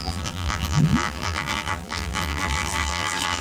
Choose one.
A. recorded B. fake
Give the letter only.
B